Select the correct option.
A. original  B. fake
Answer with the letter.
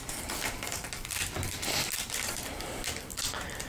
B